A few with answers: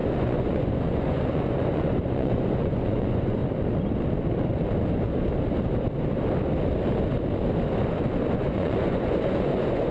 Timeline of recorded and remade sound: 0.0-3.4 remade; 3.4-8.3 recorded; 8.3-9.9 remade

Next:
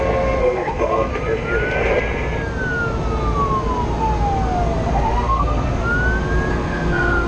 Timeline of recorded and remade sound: 0.0-1.1 remade; 1.1-4.9 recorded; 4.9-5.8 remade; 5.8-6.5 recorded; 6.5-7.3 remade

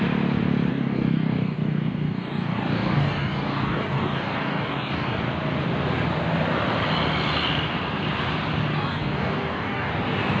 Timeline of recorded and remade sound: 0.0-0.7 recorded; 0.7-5.2 remade; 5.2-8.7 recorded; 8.7-9.9 remade; 9.9-10.4 recorded

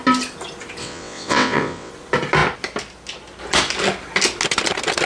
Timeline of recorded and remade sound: 0.0-0.8 recorded; 0.8-1.9 remade; 1.9-5.0 recorded

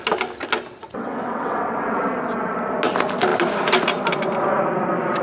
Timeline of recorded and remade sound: 0.0-0.8 recorded; 0.8-2.0 remade; 2.0-5.2 recorded

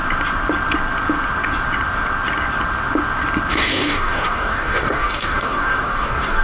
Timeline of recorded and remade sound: 0.0-3.5 recorded; 3.5-6.4 remade

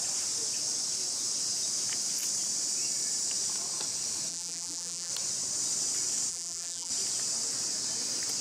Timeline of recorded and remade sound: 0.0-4.3 recorded; 4.3-5.1 remade; 5.1-6.3 recorded; 6.3-6.9 remade; 6.9-8.4 recorded